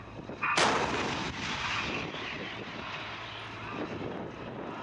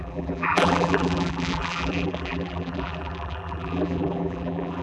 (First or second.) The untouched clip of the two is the first